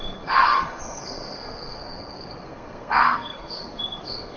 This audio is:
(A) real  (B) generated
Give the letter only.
B